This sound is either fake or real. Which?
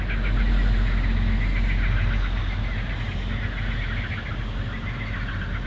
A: real